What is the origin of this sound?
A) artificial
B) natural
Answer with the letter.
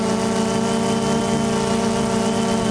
B